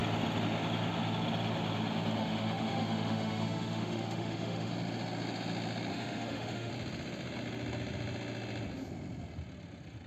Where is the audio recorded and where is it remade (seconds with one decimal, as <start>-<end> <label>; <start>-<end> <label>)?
0.0-2.2 recorded; 2.2-4.7 remade; 4.7-5.9 recorded; 5.9-6.7 remade; 6.7-10.1 recorded